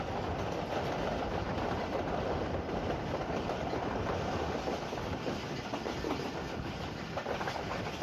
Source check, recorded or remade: recorded